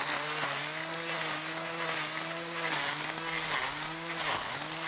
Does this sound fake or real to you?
real